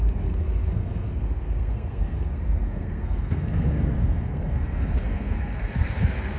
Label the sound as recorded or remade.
remade